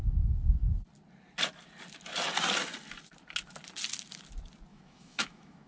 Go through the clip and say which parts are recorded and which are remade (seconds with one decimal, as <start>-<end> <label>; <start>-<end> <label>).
0.0-4.7 recorded; 4.7-5.7 remade